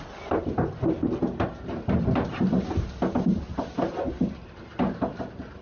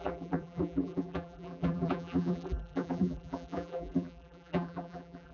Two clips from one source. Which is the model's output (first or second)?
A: second